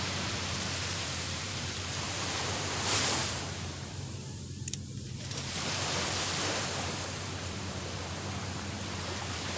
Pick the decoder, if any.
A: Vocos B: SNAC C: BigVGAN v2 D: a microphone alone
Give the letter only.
C